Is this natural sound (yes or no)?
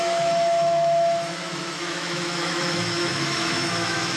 no